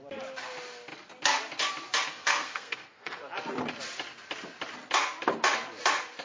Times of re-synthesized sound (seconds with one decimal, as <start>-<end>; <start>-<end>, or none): 2.1-3.2

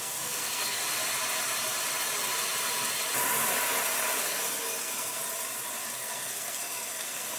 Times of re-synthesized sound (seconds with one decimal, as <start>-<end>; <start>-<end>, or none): 0.0-0.8; 4.2-5.2; 5.9-7.4

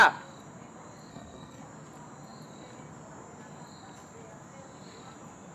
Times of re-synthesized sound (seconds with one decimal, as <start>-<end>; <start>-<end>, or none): 1.1-1.6

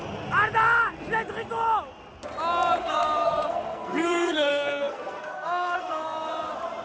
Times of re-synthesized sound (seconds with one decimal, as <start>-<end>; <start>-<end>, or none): 2.8-6.3

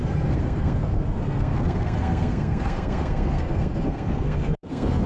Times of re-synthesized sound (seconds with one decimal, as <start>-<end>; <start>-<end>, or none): 0.0-5.1

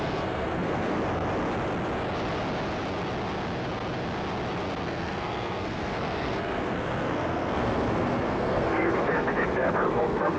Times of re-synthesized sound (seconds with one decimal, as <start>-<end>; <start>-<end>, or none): 0.0-1.0; 4.8-10.4

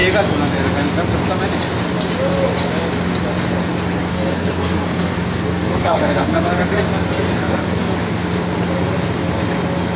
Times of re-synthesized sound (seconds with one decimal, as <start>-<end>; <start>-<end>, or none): 4.1-6.5; 7.4-7.9

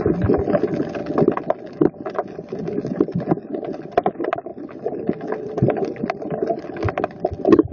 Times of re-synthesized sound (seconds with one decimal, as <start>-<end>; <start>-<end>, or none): none